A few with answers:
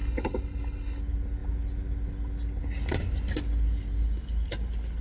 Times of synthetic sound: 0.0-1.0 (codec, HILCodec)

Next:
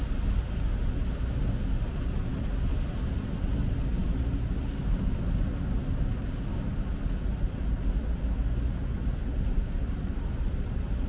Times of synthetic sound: none

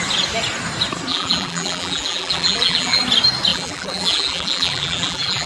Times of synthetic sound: 1.1-3.0 (vocoder, BigVGAN v2); 3.5-5.5

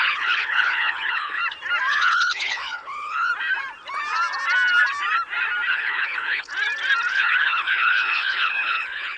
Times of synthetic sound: 0.0-1.4 (codec, HILCodec); 1.9-3.3; 5.7-6.5; 7.1-9.2

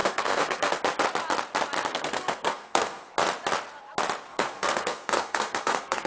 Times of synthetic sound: 0.0-0.8 (codec, SNAC); 1.9-3.1; 4.3-6.1

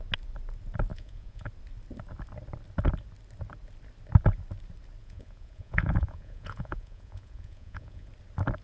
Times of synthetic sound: 0.9-1.5 (vocoder, Vocos); 5.0-8.1

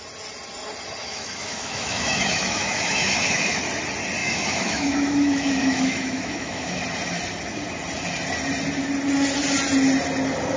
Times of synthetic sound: 1.0-3.6 (autoencoder, DAC-VAE); 4.2-6.7